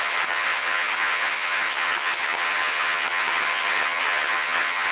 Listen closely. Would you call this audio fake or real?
fake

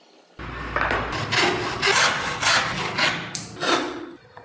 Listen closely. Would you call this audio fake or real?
real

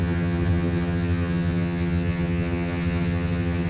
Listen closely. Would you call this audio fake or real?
fake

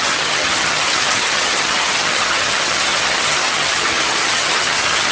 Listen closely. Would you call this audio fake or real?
fake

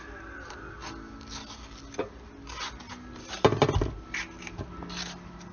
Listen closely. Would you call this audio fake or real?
real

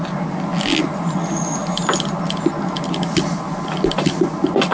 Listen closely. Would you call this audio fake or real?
real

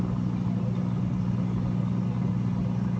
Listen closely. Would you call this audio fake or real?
real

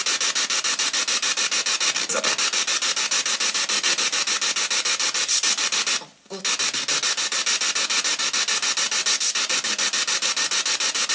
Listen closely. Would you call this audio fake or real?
real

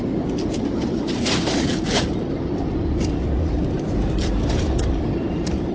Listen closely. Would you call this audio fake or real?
real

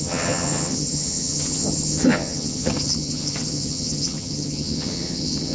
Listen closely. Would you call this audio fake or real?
fake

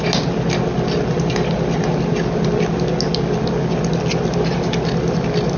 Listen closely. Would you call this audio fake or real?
real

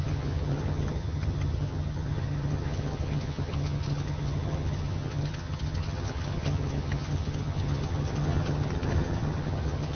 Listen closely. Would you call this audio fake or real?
fake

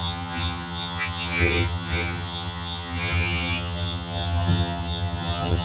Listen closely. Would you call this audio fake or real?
fake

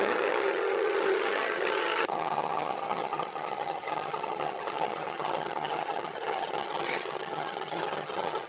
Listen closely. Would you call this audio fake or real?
fake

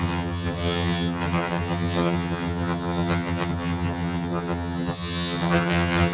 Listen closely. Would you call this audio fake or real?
fake